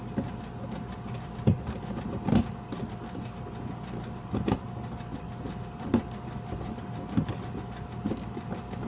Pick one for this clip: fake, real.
real